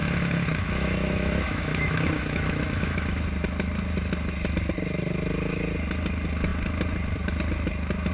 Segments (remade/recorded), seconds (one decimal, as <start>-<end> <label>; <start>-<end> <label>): 0.0-3.2 remade; 3.2-8.1 recorded